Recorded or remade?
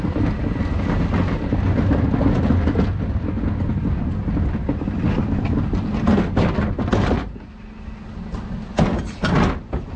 recorded